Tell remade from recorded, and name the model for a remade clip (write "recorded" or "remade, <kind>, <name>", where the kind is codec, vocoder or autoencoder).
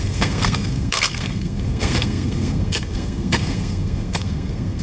remade, codec, SNAC